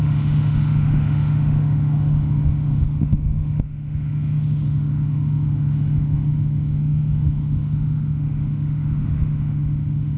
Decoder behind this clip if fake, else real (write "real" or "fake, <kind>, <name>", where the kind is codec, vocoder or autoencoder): fake, autoencoder, DAC-VAE